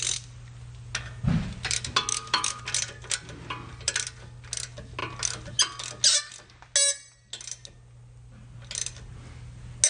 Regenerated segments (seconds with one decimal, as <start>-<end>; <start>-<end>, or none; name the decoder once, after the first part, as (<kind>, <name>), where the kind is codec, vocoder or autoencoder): 2.1-2.6 (autoencoder, DAC-VAE)